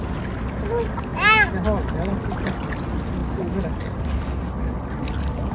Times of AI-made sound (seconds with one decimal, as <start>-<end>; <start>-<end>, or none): none